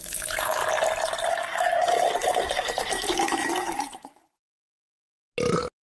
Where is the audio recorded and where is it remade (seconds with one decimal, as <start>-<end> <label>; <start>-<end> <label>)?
0.0-0.6 remade; 0.6-1.3 recorded; 1.3-4.8 remade; 4.8-5.9 recorded